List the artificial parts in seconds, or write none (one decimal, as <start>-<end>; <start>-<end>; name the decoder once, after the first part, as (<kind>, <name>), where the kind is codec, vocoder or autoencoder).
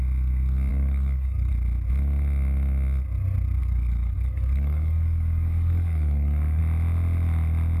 0.7-1.5 (codec, DAC); 3.6-6.6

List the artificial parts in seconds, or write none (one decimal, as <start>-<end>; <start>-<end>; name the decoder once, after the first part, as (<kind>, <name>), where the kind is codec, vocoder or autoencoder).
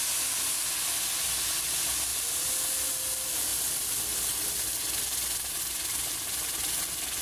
2.1-2.8 (vocoder, BigVGAN v2)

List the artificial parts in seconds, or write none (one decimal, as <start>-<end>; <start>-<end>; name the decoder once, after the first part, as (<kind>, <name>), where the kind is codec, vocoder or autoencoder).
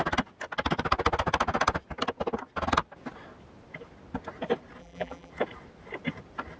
4.8-5.3 (vocoder, BigVGAN v2)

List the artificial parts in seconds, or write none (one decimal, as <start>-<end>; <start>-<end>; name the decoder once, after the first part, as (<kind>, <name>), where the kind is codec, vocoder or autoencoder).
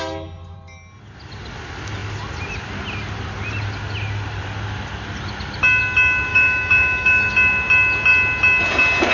6.3-7.3 (autoencoder, DAC-VAE)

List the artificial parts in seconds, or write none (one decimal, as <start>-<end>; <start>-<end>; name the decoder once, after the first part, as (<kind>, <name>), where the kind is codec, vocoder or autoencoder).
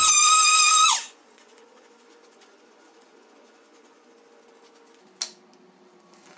0.7-4.5 (vocoder, Vocos)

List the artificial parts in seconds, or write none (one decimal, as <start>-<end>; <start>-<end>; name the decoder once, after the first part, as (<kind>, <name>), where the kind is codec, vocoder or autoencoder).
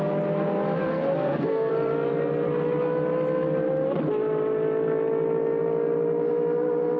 0.8-1.7 (codec, SNAC)